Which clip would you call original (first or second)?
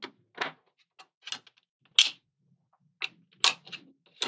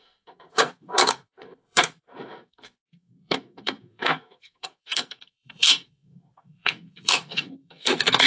first